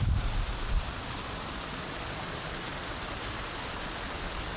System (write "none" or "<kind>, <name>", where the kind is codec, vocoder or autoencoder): none